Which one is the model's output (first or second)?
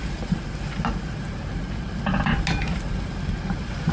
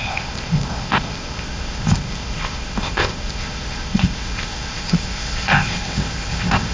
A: second